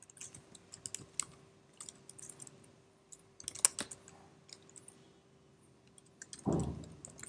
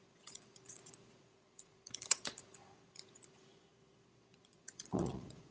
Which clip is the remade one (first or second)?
second